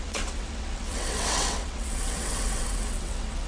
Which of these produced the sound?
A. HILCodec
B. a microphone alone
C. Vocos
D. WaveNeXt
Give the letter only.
D